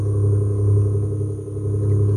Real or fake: real